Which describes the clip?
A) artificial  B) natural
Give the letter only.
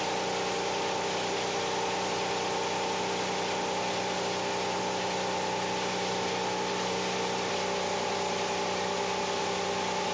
B